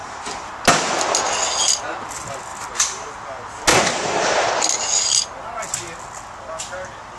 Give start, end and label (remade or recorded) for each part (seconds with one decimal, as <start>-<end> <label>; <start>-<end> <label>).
0.0-2.5 recorded; 2.5-3.1 remade; 3.1-3.7 recorded; 3.7-4.5 remade; 4.5-7.2 recorded